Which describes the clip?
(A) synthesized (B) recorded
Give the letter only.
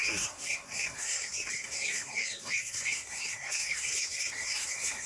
A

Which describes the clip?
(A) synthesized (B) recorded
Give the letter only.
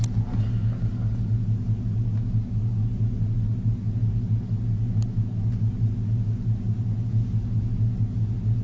B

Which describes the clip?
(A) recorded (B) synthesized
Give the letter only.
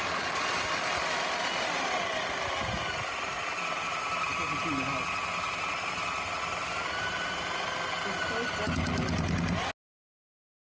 A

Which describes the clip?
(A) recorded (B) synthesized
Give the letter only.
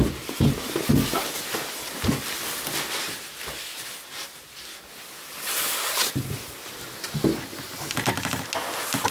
A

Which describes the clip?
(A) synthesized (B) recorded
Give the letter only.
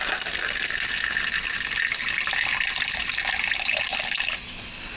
B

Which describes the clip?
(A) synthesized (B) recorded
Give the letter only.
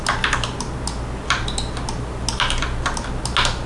B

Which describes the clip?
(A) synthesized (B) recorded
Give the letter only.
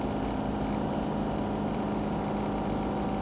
B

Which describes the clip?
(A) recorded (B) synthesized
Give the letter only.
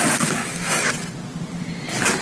A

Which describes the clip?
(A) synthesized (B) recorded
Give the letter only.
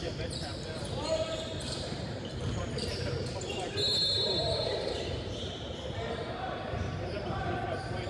A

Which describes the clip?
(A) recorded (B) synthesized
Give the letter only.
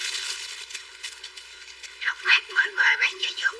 B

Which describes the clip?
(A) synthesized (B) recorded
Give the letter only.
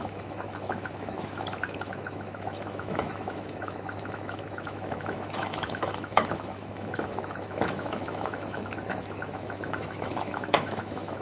A